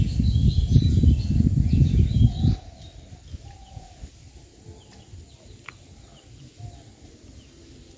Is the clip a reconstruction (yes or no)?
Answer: no